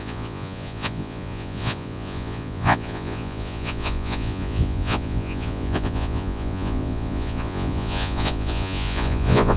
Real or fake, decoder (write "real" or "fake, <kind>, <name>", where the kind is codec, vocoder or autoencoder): fake, vocoder, Vocos